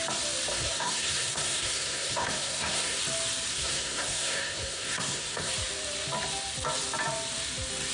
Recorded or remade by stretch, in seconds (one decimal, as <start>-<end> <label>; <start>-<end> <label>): 0.0-0.5 recorded; 0.5-3.0 remade; 3.0-3.5 recorded; 3.5-5.5 remade; 5.5-7.9 recorded